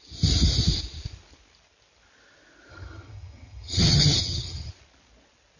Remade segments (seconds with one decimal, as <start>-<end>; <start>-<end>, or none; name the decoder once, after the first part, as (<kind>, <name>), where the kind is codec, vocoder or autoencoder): 2.7-4.7 (vocoder, HiFi-GAN)